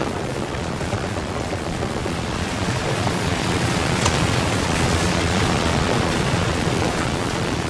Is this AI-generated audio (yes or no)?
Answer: yes